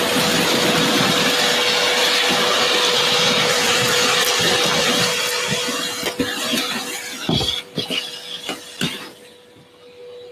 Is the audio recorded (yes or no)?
yes